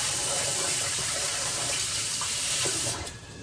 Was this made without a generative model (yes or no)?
no